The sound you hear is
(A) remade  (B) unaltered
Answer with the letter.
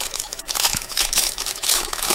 A